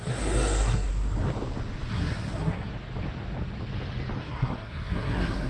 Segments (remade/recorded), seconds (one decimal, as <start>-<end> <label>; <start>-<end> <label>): 0.0-0.9 remade; 0.9-1.9 recorded; 1.9-2.7 remade; 2.7-4.2 recorded; 4.2-5.5 remade